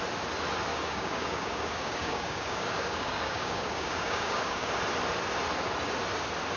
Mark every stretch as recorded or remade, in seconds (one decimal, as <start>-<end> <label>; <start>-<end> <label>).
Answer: 0.0-0.7 recorded; 0.7-4.7 remade; 4.7-6.6 recorded